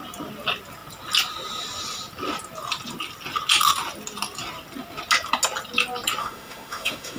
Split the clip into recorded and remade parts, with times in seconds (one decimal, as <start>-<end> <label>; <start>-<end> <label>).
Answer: 0.0-6.2 recorded; 6.2-7.2 remade